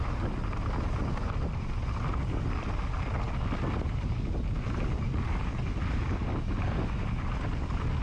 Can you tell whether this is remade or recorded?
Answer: recorded